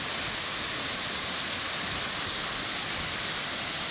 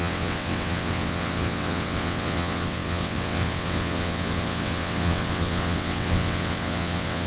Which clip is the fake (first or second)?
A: second